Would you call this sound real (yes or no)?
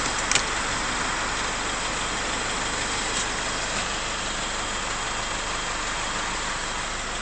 yes